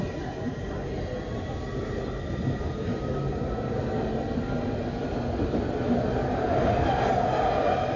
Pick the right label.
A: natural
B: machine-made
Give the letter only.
A